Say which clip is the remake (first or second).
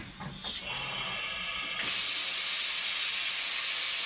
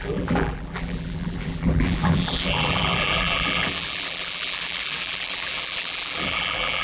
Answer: second